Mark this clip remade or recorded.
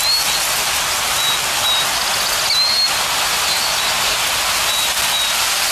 recorded